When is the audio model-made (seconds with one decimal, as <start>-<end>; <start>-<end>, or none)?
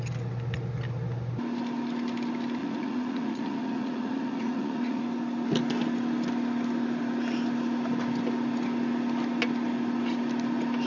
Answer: 2.6-5.0